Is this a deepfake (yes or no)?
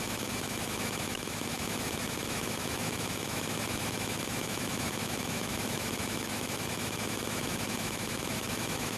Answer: yes